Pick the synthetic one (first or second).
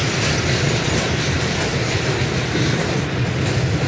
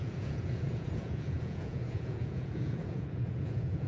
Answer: second